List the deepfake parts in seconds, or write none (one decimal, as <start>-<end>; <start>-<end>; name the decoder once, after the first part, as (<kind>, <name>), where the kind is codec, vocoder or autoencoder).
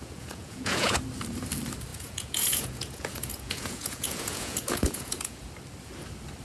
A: 0.0-1.0 (vocoder, Vocos); 1.9-5.5